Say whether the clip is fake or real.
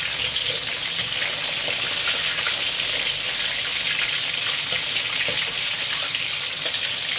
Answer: real